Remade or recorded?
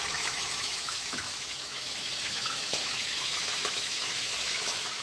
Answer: remade